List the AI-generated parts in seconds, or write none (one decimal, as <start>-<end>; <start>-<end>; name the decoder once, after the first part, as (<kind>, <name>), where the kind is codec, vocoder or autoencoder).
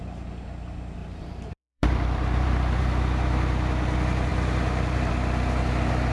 1.0-2.8 (vocoder, BigVGAN v2); 4.3-5.1